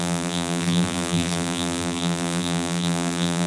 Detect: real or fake fake